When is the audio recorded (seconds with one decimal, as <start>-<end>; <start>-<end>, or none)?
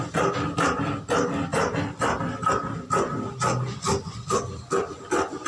0.0-5.5